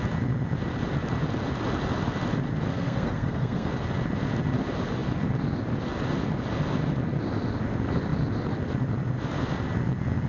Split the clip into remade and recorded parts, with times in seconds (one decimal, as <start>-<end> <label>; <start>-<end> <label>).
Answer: 0.0-2.7 recorded; 2.7-3.7 remade; 3.7-10.3 recorded